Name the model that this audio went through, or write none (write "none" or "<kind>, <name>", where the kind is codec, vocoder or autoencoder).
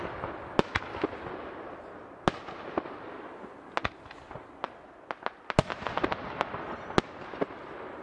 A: none